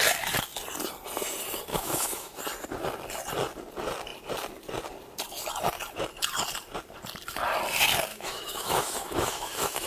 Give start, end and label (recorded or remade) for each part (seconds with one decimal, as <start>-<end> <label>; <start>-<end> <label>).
0.0-1.7 recorded; 1.7-2.4 remade; 2.4-8.1 recorded; 8.1-9.9 remade